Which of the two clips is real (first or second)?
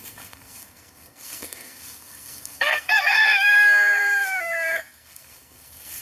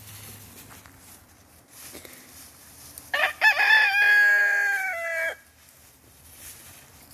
second